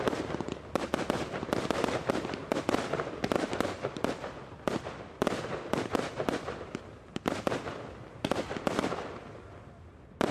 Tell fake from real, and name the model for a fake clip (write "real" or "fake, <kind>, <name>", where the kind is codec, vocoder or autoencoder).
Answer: real